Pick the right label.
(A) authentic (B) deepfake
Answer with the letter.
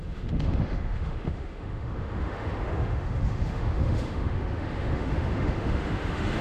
B